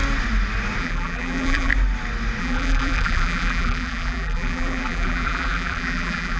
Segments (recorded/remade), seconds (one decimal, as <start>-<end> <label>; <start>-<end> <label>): 0.0-0.8 recorded; 0.8-1.7 remade; 1.7-2.4 recorded; 2.4-6.4 remade